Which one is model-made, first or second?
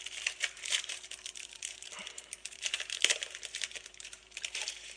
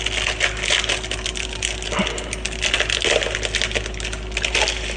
first